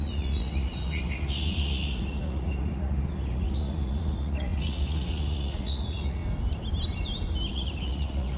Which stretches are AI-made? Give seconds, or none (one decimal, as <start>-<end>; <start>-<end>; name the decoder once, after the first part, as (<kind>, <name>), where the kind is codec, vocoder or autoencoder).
0.0-6.2 (vocoder, Vocos); 7.5-8.4